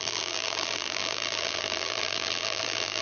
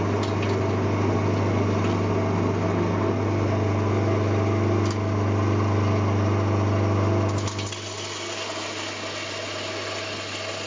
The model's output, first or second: first